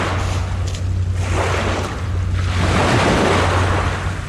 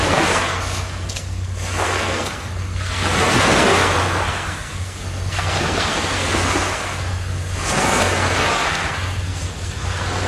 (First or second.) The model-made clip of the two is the second